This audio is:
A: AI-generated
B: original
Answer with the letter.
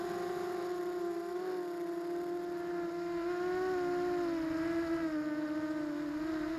B